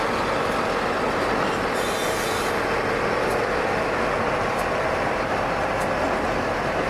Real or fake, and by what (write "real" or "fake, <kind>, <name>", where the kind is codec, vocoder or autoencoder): real